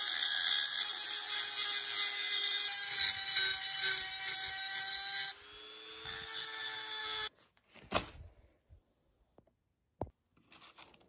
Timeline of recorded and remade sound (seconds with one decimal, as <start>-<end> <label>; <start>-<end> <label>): 0.0-7.0 recorded; 7.0-7.6 remade; 7.6-11.1 recorded